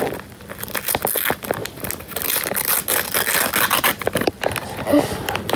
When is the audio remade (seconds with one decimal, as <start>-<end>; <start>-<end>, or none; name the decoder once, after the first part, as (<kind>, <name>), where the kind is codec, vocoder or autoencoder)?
none

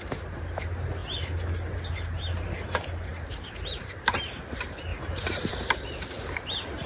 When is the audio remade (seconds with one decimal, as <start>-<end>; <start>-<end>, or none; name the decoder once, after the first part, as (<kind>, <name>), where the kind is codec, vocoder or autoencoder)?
3.1-4.2 (vocoder, BigVGAN v2); 4.9-5.7

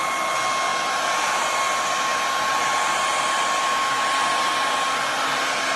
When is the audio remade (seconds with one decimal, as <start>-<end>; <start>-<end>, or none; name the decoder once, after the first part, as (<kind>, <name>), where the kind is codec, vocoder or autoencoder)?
none

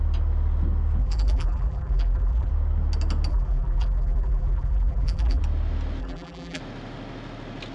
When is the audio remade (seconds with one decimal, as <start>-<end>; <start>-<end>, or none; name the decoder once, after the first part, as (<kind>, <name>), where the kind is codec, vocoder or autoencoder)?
1.0-2.5 (vocoder, BigVGAN v2); 3.3-5.4; 6.0-6.6